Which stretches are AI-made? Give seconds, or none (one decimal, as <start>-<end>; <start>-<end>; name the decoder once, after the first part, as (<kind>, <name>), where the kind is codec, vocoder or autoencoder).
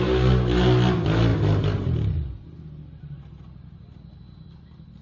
none